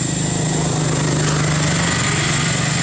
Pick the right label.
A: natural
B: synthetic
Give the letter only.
A